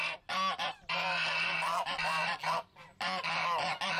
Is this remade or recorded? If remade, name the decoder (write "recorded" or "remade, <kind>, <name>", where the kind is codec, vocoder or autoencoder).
recorded